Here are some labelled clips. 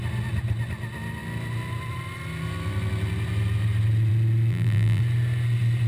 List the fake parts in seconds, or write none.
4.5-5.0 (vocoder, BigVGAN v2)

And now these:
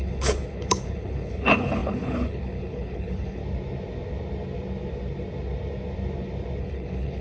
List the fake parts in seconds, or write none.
0.0-3.4 (codec, HILCodec); 6.6-7.2

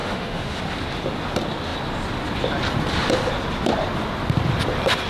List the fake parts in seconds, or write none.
0.0-0.6 (autoencoder, DAC-VAE)

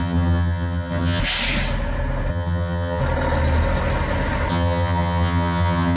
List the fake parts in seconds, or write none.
0.0-1.2 (vocoder, HiFi-GAN); 2.3-3.0; 4.5-6.0

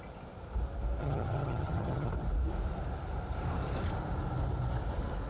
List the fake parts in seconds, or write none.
1.0-2.1 (vocoder, HiFi-GAN)